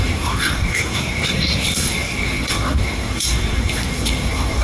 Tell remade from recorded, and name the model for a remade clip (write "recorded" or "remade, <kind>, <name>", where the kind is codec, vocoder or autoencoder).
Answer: remade, codec, SNAC